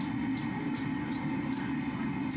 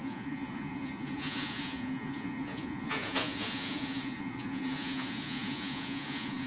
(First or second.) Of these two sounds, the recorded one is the first